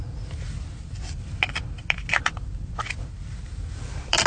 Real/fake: fake